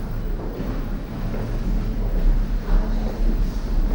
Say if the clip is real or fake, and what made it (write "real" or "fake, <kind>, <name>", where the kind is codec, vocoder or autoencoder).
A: real